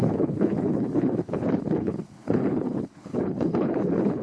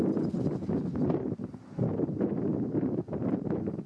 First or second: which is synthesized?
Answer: first